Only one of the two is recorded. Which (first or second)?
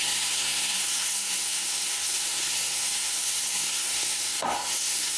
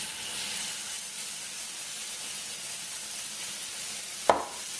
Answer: second